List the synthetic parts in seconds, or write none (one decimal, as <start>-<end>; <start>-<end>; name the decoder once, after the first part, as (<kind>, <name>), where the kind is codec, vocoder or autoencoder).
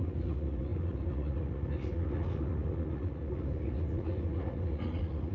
0.0-5.3 (vocoder, Vocos)